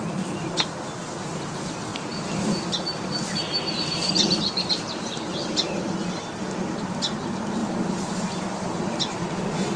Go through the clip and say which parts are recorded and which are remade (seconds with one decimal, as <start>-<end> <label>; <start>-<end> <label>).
0.0-1.9 recorded; 1.9-6.2 remade; 6.2-9.8 recorded